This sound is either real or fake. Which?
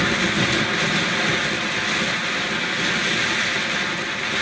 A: real